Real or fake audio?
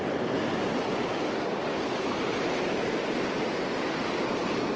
real